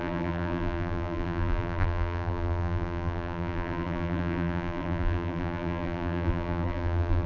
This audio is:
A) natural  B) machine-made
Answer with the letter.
B